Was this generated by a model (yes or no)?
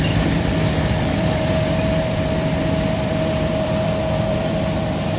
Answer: yes